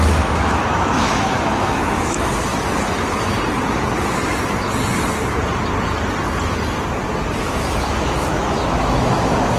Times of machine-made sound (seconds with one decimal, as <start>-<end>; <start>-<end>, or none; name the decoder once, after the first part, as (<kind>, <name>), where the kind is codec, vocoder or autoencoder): 0.0-2.5 (autoencoder, DAC-VAE); 7.4-9.6